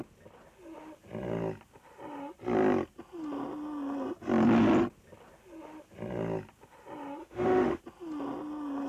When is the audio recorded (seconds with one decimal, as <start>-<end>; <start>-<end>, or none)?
0.0-7.2; 7.8-8.9